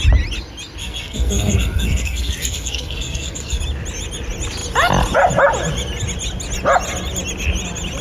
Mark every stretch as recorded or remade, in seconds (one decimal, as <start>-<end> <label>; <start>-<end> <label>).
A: 0.0-0.8 recorded; 0.8-3.6 remade; 3.6-8.0 recorded